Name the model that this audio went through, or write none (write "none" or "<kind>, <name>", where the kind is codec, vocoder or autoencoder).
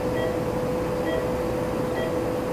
none